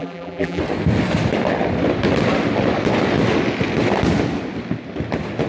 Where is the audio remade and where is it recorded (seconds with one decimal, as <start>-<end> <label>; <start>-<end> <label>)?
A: 0.0-0.6 remade; 0.6-5.5 recorded